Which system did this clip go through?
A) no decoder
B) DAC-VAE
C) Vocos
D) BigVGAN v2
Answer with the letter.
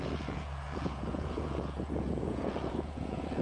C